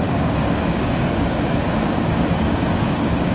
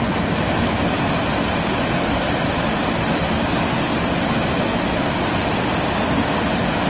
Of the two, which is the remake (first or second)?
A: first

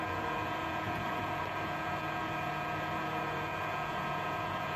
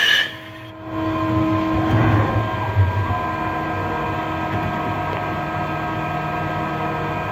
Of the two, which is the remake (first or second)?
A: first